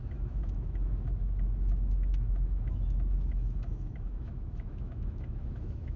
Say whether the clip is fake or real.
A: fake